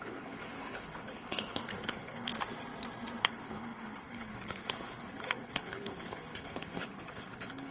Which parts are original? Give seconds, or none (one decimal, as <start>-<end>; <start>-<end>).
2.3-3.2